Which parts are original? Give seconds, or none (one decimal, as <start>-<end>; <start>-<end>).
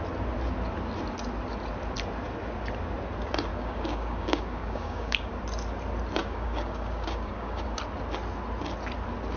0.0-3.5; 5.3-6.2; 7.8-9.4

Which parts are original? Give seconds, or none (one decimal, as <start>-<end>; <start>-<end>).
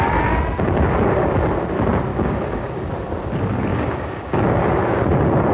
0.0-2.1; 2.9-3.7; 4.4-5.5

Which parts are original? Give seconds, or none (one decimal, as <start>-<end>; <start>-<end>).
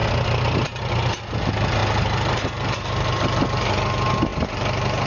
0.0-5.1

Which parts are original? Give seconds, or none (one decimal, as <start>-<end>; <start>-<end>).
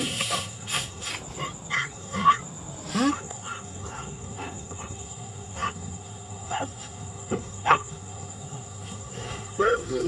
1.1-1.7; 2.4-3.1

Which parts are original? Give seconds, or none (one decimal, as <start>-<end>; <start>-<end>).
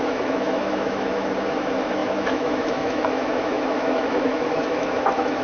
none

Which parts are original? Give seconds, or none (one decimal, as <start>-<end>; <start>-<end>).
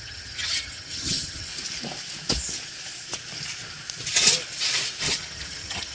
1.5-5.0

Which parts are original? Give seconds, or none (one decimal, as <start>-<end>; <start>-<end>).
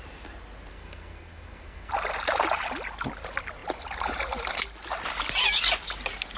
0.0-0.7; 1.9-6.4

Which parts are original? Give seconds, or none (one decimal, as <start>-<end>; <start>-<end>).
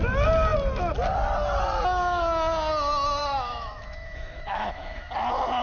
0.0-3.2; 5.1-5.6